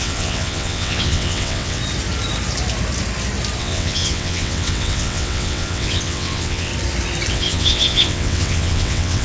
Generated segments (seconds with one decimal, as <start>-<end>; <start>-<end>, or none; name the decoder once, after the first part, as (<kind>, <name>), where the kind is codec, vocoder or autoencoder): 0.0-1.8 (vocoder, WaveNeXt); 3.6-6.7; 7.3-9.2